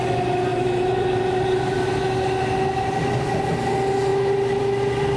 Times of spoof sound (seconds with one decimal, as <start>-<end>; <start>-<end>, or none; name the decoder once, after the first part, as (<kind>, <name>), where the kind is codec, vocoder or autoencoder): 0.5-2.0 (vocoder, BigVGAN v2)